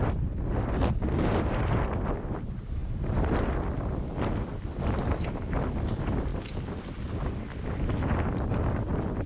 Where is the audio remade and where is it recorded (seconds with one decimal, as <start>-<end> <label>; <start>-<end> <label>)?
0.0-9.3 recorded

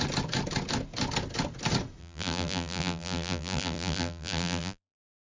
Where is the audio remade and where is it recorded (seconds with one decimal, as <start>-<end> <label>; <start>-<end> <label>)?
0.0-2.0 recorded; 2.0-5.3 remade

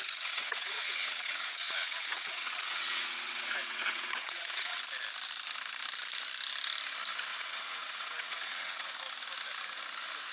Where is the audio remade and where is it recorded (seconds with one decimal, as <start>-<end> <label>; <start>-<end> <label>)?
0.0-4.8 remade; 4.8-7.3 recorded; 7.3-8.9 remade; 8.9-10.3 recorded

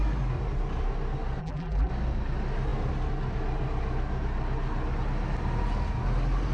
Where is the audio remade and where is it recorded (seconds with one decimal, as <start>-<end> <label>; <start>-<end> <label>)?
0.0-1.4 recorded; 1.4-1.9 remade; 1.9-6.5 recorded

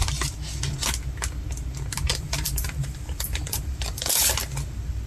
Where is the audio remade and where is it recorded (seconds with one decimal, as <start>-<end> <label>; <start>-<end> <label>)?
0.0-2.1 recorded; 2.1-4.3 remade; 4.3-5.1 recorded